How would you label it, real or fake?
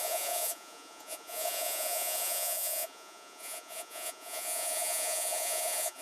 fake